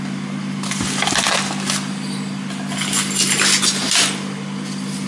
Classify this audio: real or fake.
real